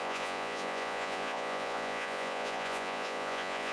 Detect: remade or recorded remade